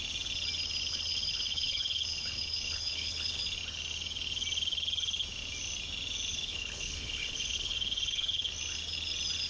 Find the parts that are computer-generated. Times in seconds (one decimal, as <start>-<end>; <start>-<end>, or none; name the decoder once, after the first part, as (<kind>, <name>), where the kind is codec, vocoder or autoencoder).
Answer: 0.9-3.4 (codec, HILCodec); 6.3-8.5